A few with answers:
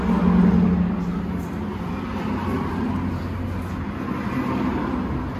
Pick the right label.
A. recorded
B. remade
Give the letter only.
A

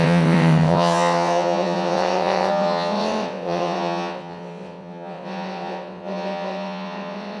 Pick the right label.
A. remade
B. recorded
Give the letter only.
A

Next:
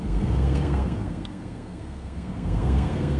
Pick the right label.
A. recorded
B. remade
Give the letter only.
B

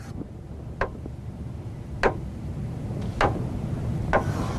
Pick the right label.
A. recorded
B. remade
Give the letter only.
A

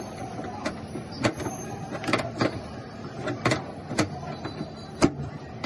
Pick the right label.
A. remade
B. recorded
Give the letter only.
B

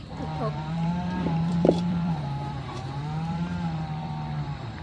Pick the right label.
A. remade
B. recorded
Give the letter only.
A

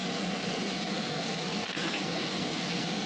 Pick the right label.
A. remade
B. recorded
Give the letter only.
A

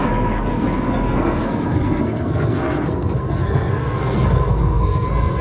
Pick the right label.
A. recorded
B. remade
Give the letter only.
B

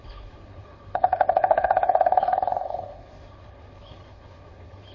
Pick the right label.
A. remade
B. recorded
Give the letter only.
A